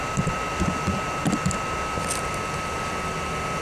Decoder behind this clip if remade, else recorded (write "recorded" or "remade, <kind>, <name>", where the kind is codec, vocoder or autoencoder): recorded